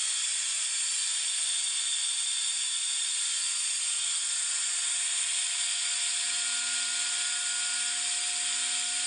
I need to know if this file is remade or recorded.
recorded